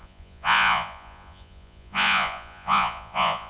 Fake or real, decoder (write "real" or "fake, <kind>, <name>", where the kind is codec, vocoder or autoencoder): fake, vocoder, Vocos